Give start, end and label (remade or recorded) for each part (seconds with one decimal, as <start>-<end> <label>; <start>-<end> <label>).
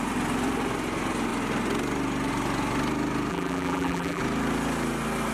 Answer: 0.0-3.3 recorded; 3.3-4.2 remade; 4.2-5.3 recorded